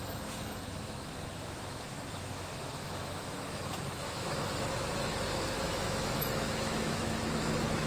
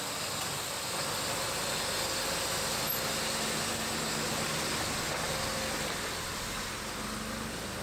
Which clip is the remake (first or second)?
first